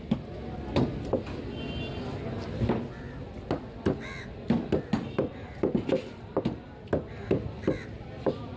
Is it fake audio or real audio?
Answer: real